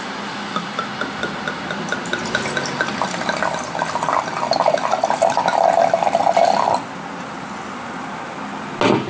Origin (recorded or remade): recorded